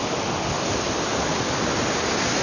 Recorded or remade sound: recorded